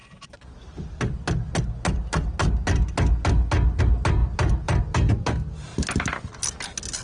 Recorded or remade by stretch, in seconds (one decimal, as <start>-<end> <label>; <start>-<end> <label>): 0.0-7.0 recorded